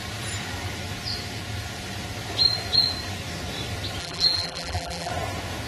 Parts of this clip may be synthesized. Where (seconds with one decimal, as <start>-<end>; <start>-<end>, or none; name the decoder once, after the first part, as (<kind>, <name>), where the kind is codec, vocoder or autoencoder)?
4.0-5.1 (vocoder, BigVGAN v2)